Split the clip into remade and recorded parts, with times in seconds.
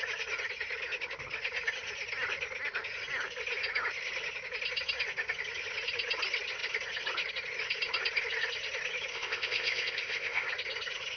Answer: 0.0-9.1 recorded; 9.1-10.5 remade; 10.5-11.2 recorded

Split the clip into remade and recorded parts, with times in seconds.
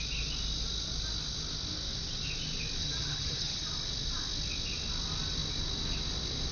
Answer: 0.0-2.8 recorded; 2.8-3.6 remade; 3.6-6.5 recorded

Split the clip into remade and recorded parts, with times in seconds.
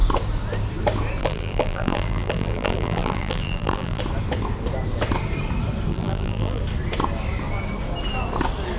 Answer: 0.0-1.2 recorded; 1.2-4.0 remade; 4.0-5.9 recorded; 5.9-6.6 remade; 6.6-8.8 recorded